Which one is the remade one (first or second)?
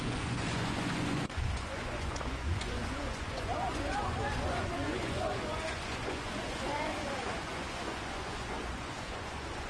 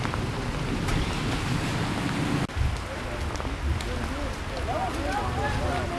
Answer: first